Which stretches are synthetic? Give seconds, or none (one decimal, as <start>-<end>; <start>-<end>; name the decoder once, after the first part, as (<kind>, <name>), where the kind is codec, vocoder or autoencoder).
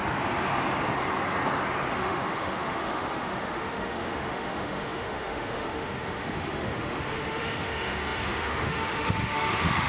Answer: 1.9-9.9 (autoencoder, DAC-VAE)